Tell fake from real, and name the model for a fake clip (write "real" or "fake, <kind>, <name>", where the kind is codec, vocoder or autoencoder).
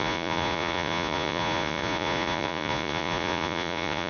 fake, vocoder, Vocos